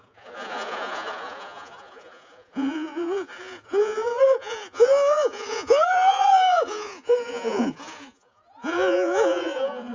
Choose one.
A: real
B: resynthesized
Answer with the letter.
B